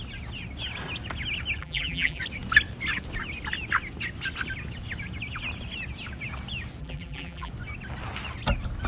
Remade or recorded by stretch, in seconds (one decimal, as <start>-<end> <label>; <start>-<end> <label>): 0.0-1.6 recorded; 1.6-2.2 remade; 2.2-6.8 recorded; 6.8-7.5 remade; 7.5-8.9 recorded